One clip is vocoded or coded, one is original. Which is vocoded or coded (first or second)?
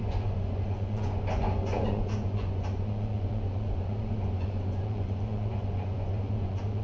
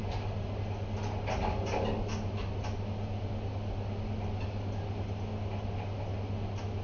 first